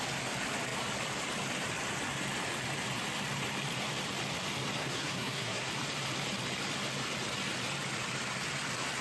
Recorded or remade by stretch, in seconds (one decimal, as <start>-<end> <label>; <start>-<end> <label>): 0.0-4.8 recorded; 4.8-5.7 remade; 5.7-9.0 recorded